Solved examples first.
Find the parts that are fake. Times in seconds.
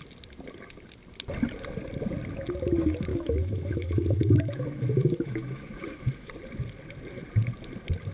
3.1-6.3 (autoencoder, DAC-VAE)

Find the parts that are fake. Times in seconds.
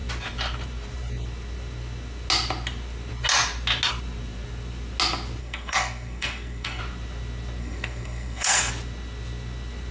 5.4-6.8 (codec, SNAC); 7.6-8.7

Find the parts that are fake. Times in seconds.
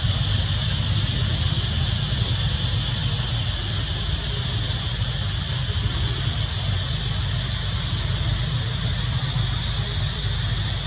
none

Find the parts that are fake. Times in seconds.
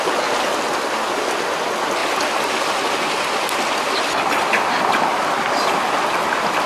none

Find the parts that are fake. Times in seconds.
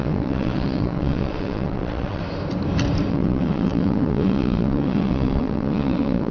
0.0-2.2 (vocoder, WaveNeXt); 3.1-6.3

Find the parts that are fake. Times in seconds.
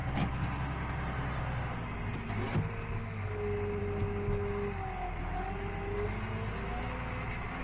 none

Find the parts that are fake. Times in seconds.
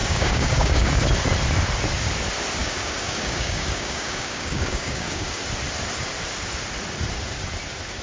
0.0-0.9 (codec, DAC); 2.6-5.4